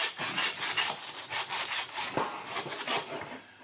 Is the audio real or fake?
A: real